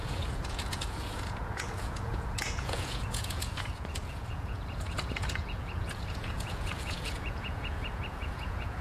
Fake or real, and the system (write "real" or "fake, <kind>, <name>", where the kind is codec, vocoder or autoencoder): fake, vocoder, Vocos